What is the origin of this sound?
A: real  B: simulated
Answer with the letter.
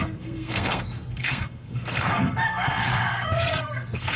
B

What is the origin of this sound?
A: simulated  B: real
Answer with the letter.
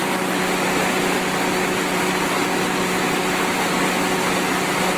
B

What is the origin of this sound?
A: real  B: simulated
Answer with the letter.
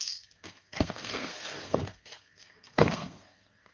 B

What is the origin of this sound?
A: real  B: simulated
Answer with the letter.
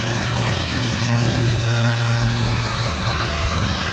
B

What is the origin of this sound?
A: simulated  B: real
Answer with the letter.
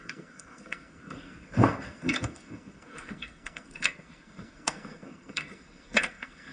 A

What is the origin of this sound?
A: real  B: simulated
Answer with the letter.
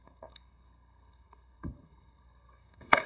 B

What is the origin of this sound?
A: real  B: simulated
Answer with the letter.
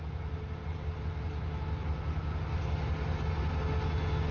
A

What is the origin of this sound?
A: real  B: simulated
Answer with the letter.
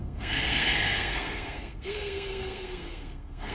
B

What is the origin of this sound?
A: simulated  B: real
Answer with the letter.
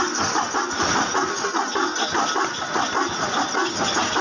B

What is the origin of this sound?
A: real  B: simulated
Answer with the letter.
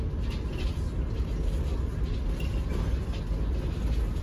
A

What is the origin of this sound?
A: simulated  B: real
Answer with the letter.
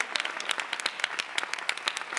B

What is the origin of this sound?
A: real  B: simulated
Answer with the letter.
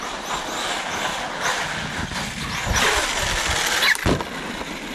A